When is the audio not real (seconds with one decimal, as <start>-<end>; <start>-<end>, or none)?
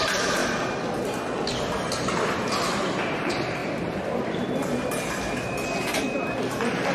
0.0-0.4; 2.7-6.9